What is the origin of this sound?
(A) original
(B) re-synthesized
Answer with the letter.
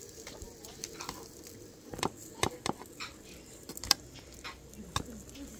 B